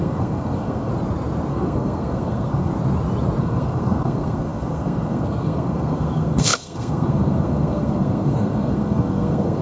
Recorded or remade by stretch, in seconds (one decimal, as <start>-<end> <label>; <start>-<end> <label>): 0.0-0.9 remade; 0.9-1.5 recorded; 1.5-2.7 remade; 2.7-3.4 recorded; 3.4-9.6 remade